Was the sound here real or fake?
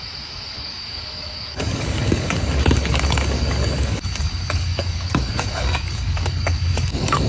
fake